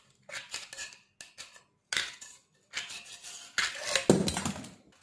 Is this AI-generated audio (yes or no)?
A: no